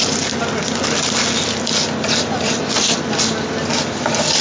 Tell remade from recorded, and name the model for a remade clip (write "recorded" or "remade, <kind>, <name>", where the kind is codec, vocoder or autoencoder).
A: recorded